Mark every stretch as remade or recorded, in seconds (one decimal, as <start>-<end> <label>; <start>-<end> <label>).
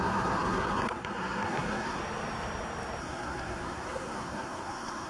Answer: 0.0-2.0 remade; 2.0-3.0 recorded; 3.0-5.1 remade